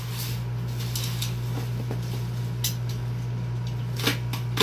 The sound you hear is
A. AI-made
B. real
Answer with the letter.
B